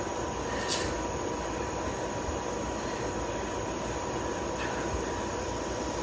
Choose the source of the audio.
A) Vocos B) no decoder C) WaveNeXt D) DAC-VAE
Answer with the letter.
B